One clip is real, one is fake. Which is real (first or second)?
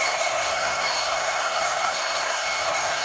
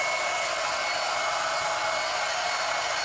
second